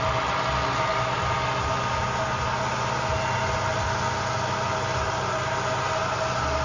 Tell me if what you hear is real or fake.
real